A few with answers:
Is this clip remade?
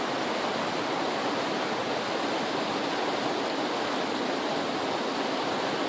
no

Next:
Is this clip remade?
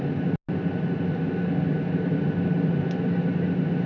no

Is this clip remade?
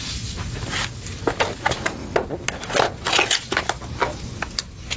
no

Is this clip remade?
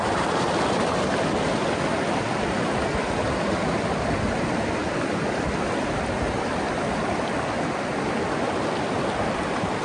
no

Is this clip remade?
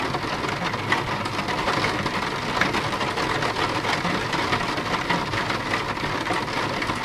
no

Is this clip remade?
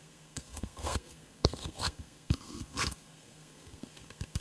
yes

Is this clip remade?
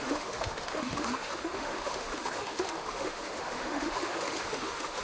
yes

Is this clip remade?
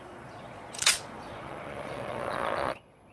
yes